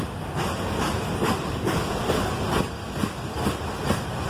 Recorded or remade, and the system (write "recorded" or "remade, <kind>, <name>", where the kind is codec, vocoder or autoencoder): recorded